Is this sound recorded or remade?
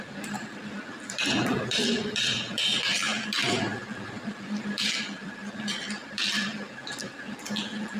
remade